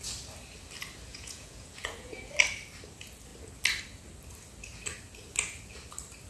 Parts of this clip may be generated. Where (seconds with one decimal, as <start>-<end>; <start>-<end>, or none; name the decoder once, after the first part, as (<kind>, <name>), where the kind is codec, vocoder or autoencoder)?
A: 1.1-2.3 (vocoder, Vocos)